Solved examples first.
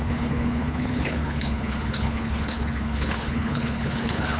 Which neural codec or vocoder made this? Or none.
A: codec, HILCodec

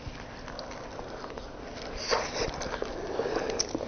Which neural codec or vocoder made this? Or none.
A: none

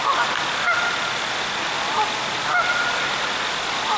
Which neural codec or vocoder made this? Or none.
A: none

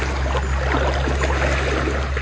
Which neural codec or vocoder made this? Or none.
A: none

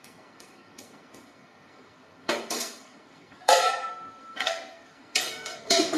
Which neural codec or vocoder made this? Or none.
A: codec, SNAC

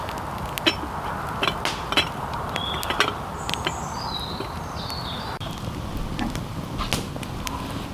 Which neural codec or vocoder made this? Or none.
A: none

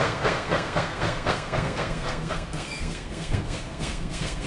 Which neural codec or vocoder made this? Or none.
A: codec, SNAC